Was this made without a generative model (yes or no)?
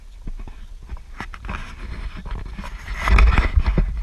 yes